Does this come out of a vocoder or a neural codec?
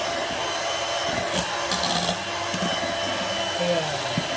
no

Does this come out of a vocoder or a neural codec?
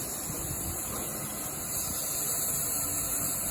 no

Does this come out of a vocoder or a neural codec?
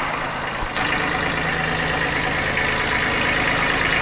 no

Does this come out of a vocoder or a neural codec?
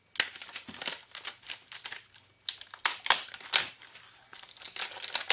no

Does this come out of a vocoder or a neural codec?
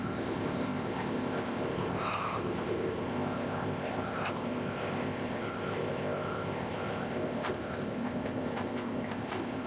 yes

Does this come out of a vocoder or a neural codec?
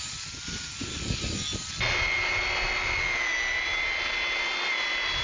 no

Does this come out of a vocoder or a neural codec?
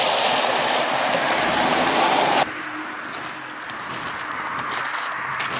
no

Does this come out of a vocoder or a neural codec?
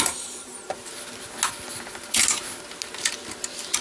no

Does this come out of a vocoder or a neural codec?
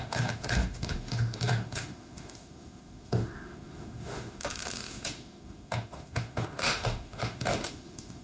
yes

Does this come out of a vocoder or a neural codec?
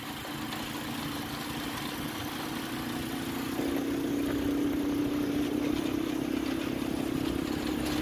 no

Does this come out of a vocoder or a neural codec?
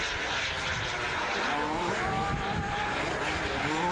no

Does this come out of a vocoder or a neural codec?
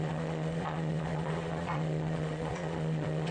yes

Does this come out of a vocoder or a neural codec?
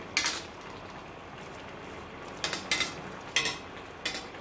no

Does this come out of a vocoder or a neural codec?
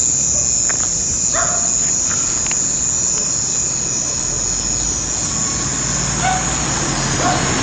no